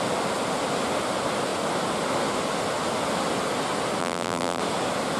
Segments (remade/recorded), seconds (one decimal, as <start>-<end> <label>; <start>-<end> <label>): 0.0-4.0 recorded; 4.0-4.6 remade; 4.6-5.2 recorded